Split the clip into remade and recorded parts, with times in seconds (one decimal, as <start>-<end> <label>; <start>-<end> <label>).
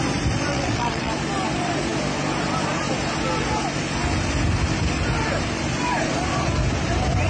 0.0-0.5 recorded; 0.5-1.1 remade; 1.1-7.3 recorded